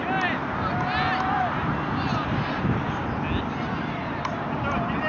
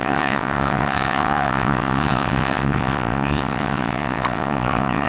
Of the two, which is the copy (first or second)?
second